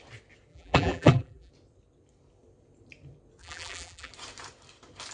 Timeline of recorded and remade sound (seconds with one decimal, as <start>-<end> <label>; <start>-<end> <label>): 0.0-0.5 recorded; 0.5-1.5 remade; 1.5-3.4 recorded; 3.4-4.1 remade; 4.1-5.1 recorded